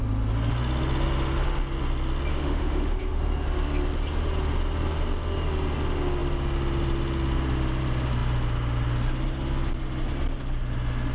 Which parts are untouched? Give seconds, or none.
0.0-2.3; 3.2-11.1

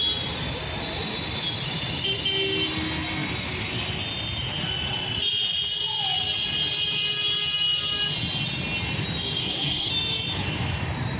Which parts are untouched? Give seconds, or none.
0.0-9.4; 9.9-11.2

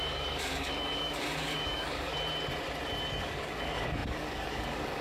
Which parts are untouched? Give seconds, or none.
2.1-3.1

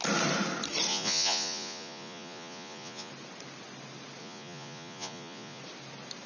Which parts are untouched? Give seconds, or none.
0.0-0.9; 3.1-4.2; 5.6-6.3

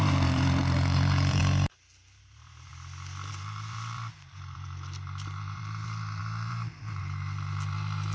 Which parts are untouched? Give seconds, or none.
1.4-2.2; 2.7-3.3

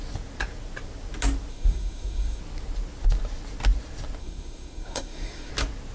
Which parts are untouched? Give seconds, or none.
0.0-1.5; 2.4-4.2; 5.5-5.9

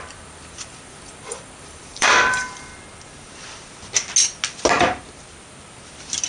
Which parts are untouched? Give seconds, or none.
2.7-6.3